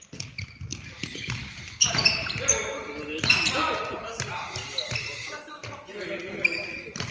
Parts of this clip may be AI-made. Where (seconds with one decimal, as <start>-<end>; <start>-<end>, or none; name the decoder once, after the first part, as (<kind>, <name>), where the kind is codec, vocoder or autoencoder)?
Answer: none